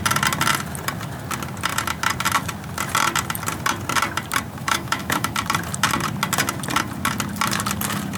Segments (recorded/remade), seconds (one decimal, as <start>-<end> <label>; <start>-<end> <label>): 0.0-4.6 recorded; 4.6-5.3 remade; 5.3-8.2 recorded